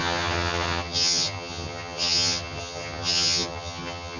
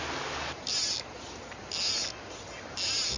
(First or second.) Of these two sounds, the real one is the second